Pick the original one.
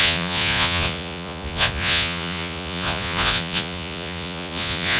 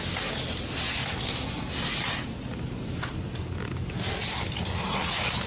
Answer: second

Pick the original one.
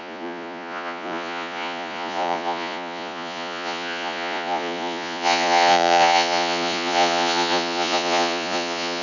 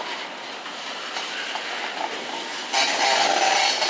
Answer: second